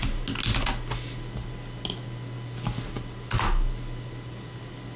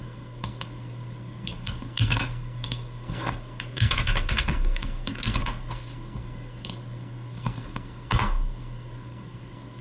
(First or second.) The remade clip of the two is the second